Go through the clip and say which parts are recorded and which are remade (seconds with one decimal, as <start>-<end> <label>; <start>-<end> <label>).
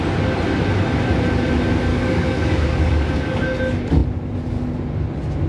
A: 0.0-1.9 recorded; 1.9-3.6 remade; 3.6-5.5 recorded